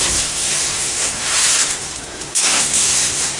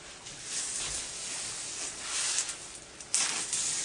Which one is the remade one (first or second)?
first